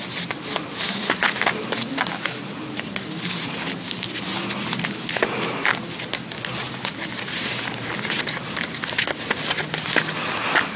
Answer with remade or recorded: recorded